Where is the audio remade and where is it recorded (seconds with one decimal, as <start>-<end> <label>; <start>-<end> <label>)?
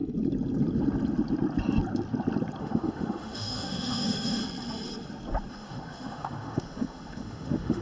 0.0-2.6 recorded; 2.6-4.4 remade; 4.4-5.5 recorded; 5.5-7.8 remade